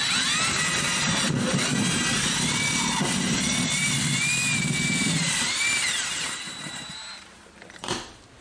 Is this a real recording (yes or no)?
yes